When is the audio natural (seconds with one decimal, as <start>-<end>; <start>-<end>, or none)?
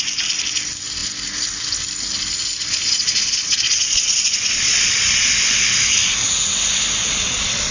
0.0-2.8; 5.3-7.0